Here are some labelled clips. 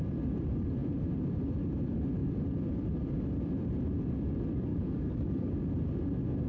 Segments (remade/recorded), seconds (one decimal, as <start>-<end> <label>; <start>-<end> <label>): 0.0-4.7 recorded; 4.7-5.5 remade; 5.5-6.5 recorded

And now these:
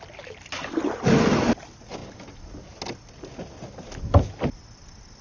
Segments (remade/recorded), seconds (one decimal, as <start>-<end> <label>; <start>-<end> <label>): 0.0-5.2 recorded

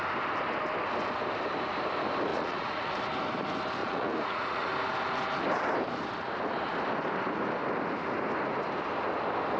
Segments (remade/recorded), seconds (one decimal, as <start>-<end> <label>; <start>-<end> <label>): 0.0-2.3 recorded; 2.3-3.0 remade; 3.0-3.8 recorded; 3.8-4.7 remade; 4.7-9.6 recorded

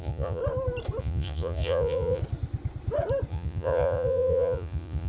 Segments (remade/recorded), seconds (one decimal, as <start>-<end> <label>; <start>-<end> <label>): 0.0-0.4 remade; 0.4-1.0 recorded; 1.0-2.2 remade; 2.2-3.3 recorded; 3.3-5.1 remade

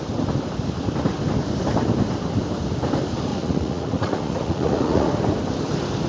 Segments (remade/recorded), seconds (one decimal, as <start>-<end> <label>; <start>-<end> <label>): 0.0-3.3 recorded; 3.3-5.1 remade; 5.1-6.1 recorded

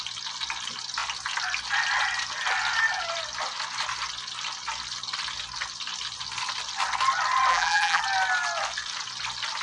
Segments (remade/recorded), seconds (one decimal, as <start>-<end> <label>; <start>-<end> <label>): 0.0-7.5 recorded; 7.5-8.0 remade; 8.0-9.6 recorded